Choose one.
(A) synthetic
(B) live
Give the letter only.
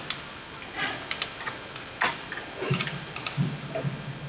B